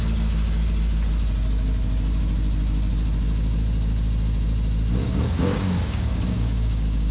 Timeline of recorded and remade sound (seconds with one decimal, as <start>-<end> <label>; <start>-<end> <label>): 0.0-5.0 recorded; 5.0-7.1 remade